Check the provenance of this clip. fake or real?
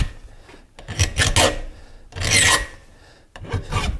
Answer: real